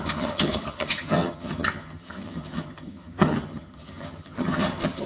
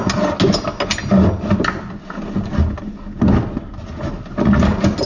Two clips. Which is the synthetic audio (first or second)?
first